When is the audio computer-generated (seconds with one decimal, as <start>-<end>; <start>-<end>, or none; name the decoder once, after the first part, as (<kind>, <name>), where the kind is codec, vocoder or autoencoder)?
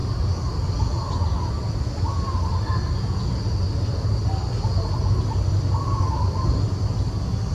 none